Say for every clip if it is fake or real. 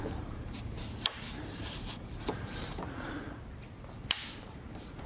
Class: fake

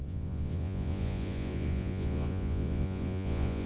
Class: fake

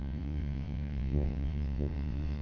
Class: fake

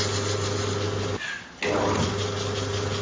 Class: real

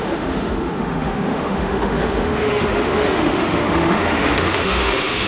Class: fake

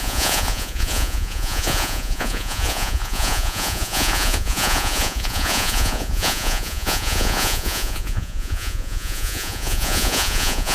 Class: fake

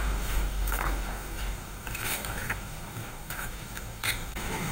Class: fake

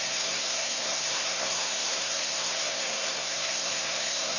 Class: fake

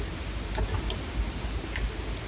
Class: real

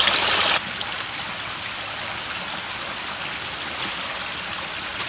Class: real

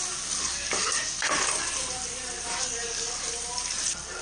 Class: real